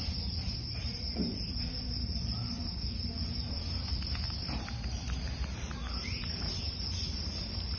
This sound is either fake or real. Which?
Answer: fake